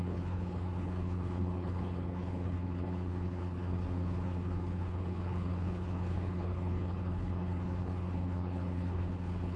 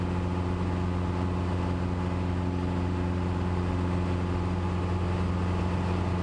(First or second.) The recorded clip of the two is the second